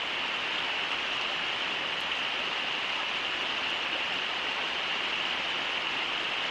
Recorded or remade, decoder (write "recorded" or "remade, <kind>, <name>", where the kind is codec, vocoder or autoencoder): recorded